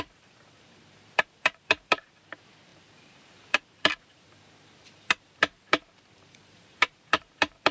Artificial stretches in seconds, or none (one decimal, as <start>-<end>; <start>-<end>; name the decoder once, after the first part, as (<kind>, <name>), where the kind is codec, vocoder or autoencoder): 0.0-7.7 (vocoder, BigVGAN v2)